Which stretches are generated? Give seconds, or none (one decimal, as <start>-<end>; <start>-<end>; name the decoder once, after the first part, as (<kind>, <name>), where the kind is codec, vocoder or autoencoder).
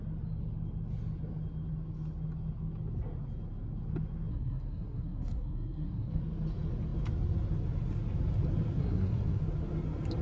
4.3-6.2 (codec, SNAC); 8.8-9.4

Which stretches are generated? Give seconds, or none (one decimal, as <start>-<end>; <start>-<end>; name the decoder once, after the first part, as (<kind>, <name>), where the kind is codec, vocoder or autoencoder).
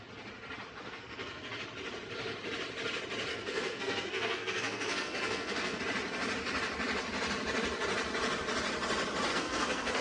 0.8-1.5 (codec, SNAC); 3.3-5.8; 9.3-10.0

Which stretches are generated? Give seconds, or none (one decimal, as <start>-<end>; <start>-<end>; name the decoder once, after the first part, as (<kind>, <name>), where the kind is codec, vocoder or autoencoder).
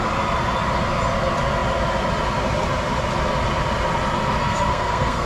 4.4-5.3 (codec, SNAC)